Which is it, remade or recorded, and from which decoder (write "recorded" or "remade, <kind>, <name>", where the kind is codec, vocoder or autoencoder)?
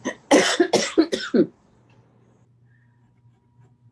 recorded